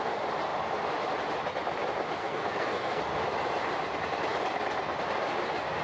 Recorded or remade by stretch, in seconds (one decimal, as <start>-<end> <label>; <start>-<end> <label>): 0.0-2.2 recorded; 2.2-3.0 remade; 3.0-5.8 recorded